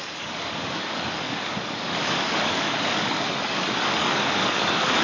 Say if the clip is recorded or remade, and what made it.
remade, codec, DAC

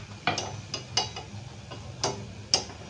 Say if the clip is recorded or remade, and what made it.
recorded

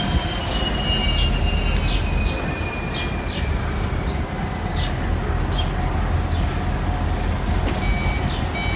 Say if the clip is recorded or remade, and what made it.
recorded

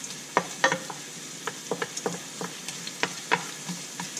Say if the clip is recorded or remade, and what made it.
recorded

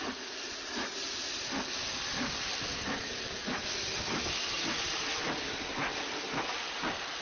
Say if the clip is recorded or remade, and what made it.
recorded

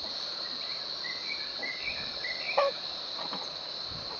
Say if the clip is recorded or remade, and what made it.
recorded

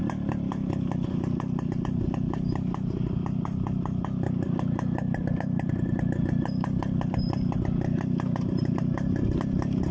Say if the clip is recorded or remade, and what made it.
recorded